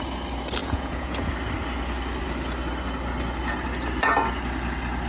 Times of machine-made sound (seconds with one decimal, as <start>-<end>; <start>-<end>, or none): 0.6-1.3